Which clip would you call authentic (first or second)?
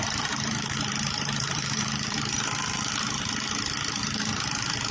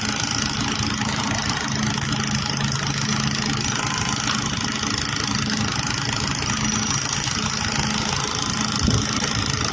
second